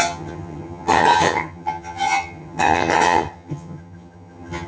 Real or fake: fake